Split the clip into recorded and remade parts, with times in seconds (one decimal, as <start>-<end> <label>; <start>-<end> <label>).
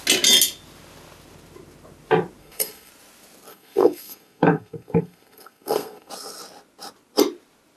0.0-2.4 recorded; 2.4-2.9 remade; 2.9-3.5 recorded; 3.5-6.1 remade; 6.1-7.8 recorded